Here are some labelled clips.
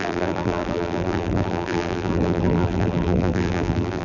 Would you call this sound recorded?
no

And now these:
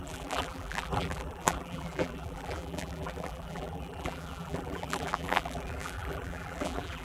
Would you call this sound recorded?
no